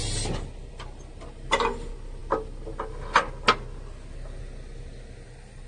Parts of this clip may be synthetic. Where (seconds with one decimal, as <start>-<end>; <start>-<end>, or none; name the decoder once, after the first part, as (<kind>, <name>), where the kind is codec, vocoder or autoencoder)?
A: none